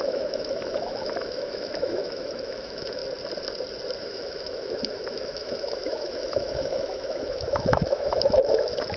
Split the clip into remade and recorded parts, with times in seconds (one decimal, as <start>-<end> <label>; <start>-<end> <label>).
0.0-3.0 remade; 3.0-4.0 recorded; 4.0-9.0 remade